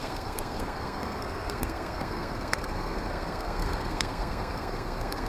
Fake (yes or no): yes